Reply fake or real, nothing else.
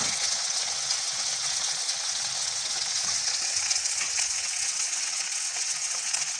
fake